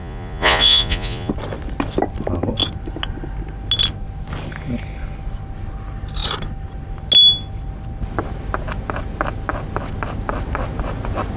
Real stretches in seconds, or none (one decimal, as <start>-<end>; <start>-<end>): 1.3-11.4